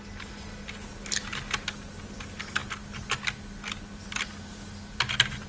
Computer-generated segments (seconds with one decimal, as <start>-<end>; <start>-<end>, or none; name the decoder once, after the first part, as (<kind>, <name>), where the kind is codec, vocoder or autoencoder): none